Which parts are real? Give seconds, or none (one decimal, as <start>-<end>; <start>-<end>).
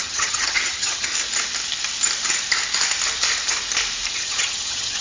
1.1-4.1